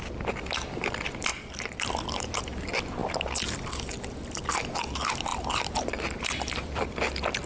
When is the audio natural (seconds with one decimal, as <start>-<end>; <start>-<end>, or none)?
0.0-1.3; 1.8-3.0; 4.4-5.3; 7.0-7.5